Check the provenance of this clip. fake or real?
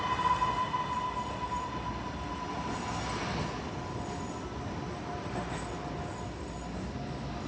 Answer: real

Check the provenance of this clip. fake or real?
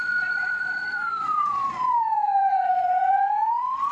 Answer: fake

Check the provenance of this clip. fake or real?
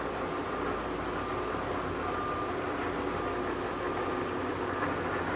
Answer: real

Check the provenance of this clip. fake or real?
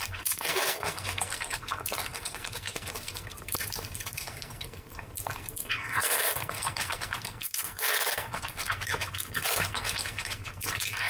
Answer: fake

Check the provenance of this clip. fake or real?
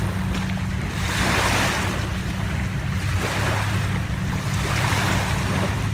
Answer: real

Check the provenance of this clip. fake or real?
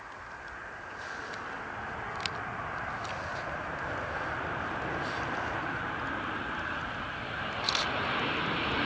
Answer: real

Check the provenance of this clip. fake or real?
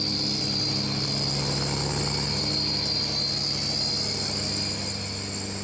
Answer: real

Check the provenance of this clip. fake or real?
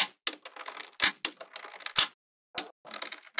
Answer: real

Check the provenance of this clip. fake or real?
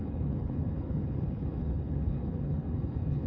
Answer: fake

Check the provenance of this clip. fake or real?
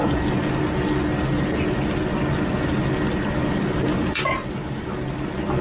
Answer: real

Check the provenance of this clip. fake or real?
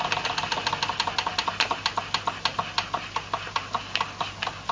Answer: real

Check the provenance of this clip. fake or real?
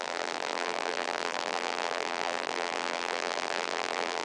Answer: fake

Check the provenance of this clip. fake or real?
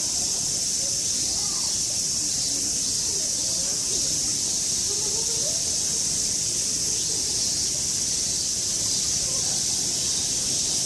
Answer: real